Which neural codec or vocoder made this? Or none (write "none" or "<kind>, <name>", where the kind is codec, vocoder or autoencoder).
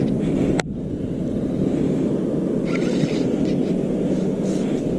none